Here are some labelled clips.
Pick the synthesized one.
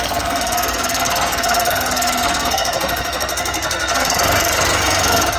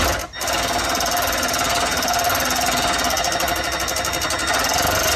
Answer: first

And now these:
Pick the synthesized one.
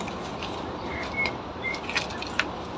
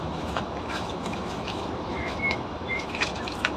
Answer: second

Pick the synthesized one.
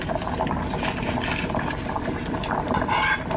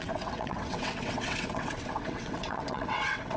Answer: second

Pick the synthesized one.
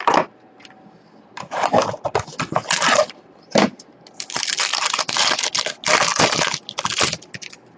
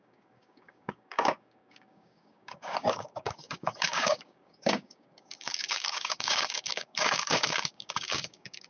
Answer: second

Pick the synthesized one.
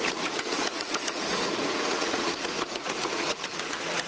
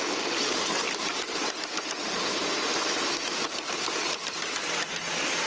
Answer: first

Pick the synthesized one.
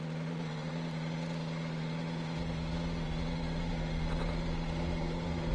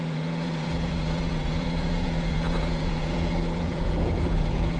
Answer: second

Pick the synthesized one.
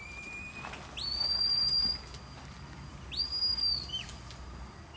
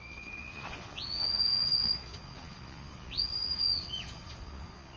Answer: second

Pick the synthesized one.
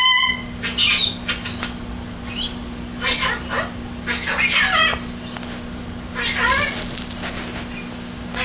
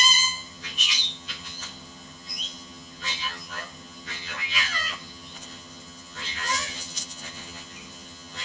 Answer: second